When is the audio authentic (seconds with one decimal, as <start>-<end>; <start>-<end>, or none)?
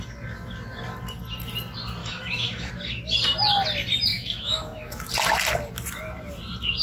0.0-2.0; 2.7-4.1; 5.1-6.8